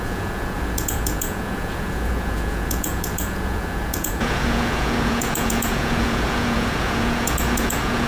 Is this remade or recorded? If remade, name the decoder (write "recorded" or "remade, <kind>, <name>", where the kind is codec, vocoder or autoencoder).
remade, vocoder, Vocos